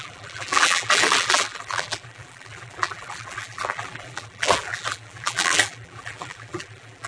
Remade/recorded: remade